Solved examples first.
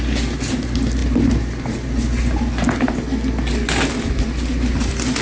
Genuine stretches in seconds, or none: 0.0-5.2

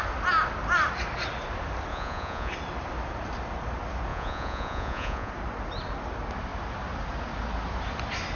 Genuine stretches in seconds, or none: 0.0-1.9; 2.5-4.1; 5.3-8.4

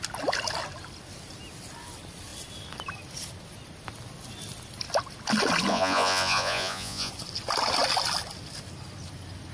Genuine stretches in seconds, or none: 0.0-5.7; 7.1-9.5

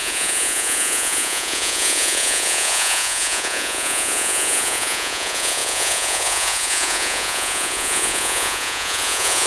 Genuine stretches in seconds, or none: none